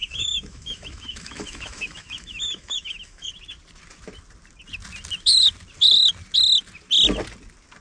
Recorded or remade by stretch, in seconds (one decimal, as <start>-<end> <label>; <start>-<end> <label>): 0.0-3.3 remade; 3.3-7.8 recorded